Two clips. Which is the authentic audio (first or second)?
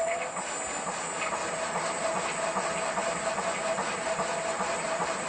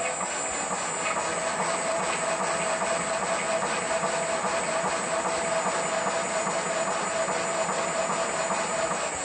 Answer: second